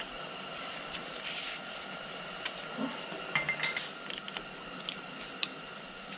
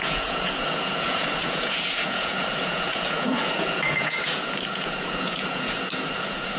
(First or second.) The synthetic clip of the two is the second